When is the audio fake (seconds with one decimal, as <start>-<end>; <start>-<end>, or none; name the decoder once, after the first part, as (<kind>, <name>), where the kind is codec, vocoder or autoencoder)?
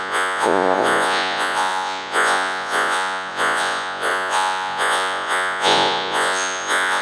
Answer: 0.0-7.0 (vocoder, Vocos)